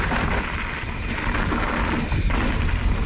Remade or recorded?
recorded